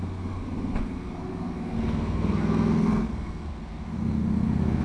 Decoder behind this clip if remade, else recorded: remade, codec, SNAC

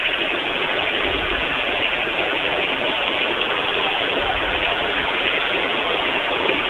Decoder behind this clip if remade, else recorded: remade, vocoder, BigVGAN v2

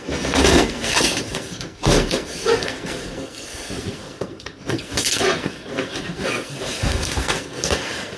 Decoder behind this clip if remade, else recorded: remade, codec, SNAC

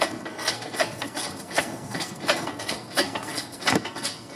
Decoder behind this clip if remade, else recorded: remade, codec, SNAC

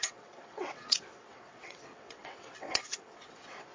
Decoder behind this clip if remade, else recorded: remade, vocoder, WaveNeXt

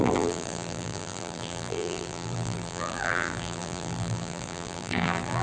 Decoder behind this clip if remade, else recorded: remade, vocoder, BigVGAN v2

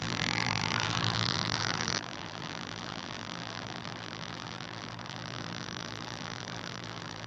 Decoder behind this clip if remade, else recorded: remade, vocoder, BigVGAN v2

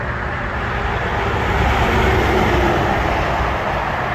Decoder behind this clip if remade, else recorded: recorded